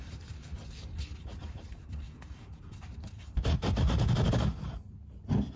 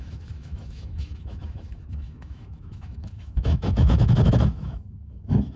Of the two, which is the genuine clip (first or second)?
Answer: first